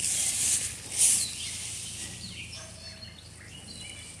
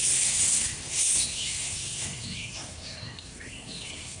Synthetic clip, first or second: second